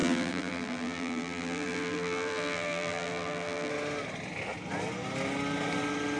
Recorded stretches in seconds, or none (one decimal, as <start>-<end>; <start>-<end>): 3.7-6.2